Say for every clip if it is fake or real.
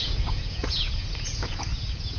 fake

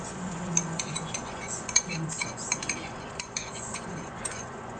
fake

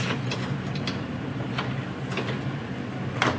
real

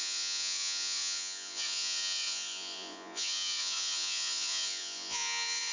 fake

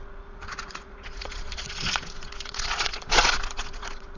fake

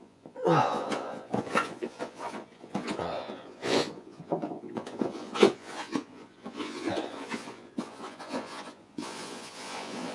fake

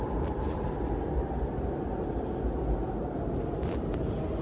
real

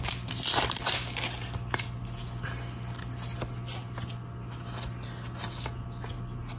real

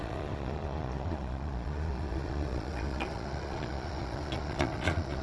fake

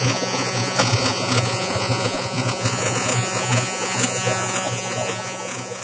fake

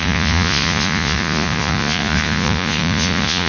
fake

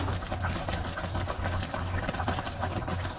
real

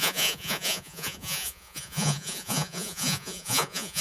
fake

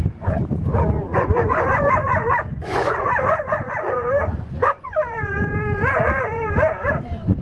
fake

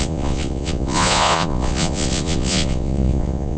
fake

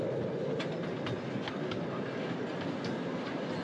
real